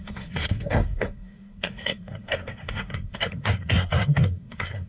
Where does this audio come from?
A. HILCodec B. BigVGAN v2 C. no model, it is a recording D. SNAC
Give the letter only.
D